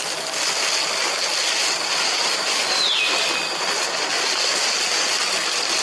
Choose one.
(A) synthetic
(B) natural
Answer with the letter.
B